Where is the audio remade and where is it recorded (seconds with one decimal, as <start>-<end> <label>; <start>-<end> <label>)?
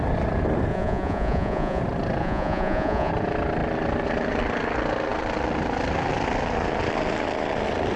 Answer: 0.0-0.7 recorded; 0.7-1.8 remade; 1.8-2.2 recorded; 2.2-3.1 remade; 3.1-8.0 recorded